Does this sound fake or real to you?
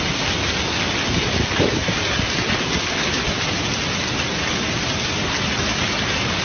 real